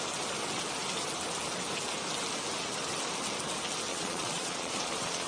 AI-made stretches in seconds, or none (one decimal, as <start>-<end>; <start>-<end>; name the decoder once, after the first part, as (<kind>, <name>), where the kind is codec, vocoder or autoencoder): 3.9-5.3 (vocoder, Vocos)